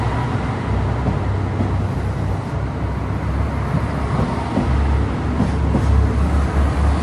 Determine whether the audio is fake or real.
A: real